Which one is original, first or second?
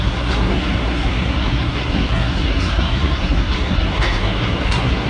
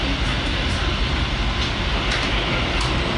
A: second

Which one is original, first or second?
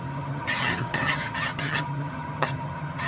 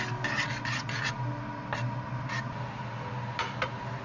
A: second